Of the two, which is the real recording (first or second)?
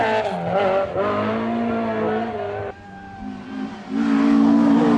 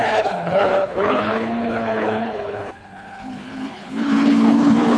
first